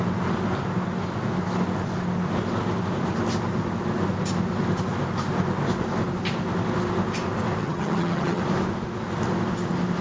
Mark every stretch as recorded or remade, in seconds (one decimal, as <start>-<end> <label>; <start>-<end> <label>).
0.0-7.6 recorded; 7.6-8.4 remade; 8.4-10.0 recorded